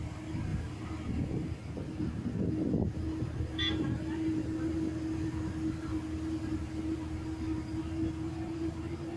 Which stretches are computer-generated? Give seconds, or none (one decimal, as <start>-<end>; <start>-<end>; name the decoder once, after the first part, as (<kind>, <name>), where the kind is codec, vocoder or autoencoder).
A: none

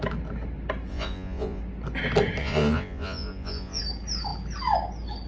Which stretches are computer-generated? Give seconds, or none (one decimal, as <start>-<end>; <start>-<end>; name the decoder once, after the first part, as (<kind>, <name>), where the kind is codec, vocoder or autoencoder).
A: 0.9-1.6 (vocoder, Vocos); 2.4-3.8